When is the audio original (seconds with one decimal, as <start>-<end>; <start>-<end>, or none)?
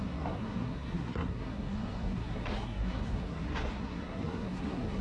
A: none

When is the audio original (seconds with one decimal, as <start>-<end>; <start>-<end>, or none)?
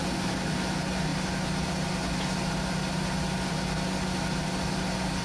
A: 0.0-5.2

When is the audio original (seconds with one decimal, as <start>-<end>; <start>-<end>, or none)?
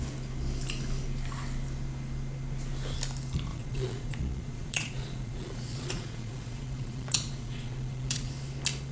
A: 0.0-3.5; 8.3-8.9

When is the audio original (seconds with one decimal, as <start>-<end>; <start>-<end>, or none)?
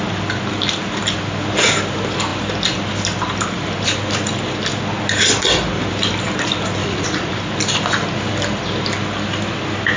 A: 0.0-6.8; 7.4-10.0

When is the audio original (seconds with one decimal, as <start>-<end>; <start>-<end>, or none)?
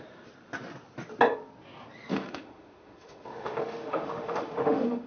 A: 0.0-2.1